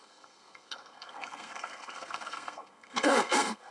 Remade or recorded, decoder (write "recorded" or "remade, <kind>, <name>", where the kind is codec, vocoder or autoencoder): remade, codec, SNAC